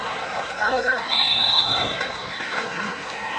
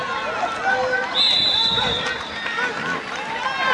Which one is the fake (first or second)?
first